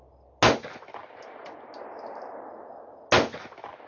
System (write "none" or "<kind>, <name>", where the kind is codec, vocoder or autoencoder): none